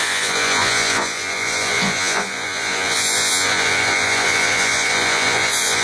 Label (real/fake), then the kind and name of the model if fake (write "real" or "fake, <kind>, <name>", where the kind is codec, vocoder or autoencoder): fake, vocoder, Vocos